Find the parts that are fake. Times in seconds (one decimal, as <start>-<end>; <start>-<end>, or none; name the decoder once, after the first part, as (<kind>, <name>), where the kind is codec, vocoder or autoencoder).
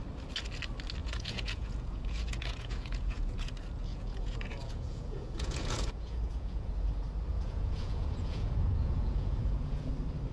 1.0-3.5 (vocoder, Vocos); 3.9-6.7; 7.3-9.9